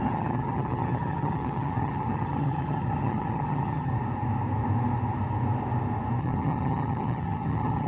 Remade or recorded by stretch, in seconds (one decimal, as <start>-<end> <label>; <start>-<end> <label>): 0.0-3.9 remade; 3.9-6.2 recorded; 6.2-7.9 remade